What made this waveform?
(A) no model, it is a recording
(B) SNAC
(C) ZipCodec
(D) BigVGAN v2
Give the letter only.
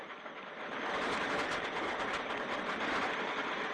D